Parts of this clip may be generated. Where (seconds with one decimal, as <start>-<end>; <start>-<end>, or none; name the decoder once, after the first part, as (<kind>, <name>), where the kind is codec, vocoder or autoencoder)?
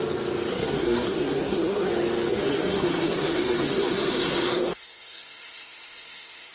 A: 0.5-1.9 (codec, SNAC); 2.3-6.5